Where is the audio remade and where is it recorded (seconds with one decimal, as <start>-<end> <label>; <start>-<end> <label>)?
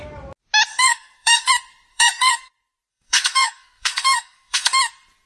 0.0-0.7 recorded; 0.7-1.5 remade; 1.5-1.9 recorded; 1.9-2.5 remade; 2.5-2.9 recorded; 2.9-4.8 remade; 4.8-5.3 recorded